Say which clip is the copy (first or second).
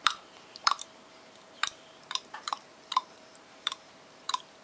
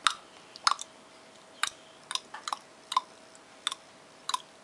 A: first